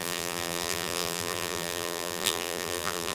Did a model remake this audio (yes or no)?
yes